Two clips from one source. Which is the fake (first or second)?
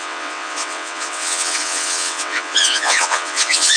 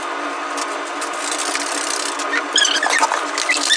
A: first